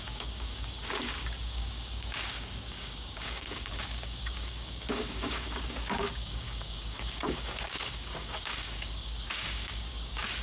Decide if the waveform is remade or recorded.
remade